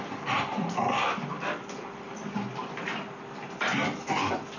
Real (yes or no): yes